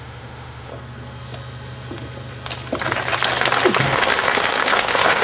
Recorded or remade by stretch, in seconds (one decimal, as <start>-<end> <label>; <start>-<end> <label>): 0.0-0.7 remade; 0.7-3.8 recorded; 3.8-5.2 remade